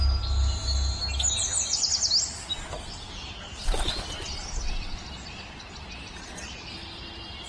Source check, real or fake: real